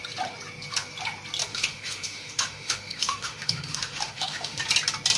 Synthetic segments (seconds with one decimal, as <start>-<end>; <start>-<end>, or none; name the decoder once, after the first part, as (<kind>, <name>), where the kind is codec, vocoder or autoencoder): 1.5-4.6 (autoencoder, DAC-VAE)